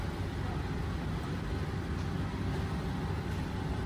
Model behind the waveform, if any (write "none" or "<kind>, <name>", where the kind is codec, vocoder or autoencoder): none